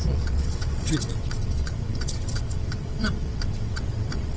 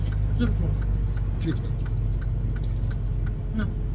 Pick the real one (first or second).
second